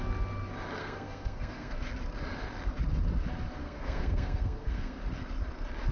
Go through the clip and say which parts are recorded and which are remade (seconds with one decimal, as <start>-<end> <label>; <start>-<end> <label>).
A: 0.0-0.8 recorded; 0.8-1.8 remade; 1.8-3.6 recorded; 3.6-5.0 remade; 5.0-5.9 recorded